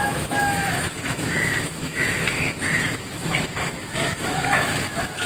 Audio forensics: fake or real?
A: fake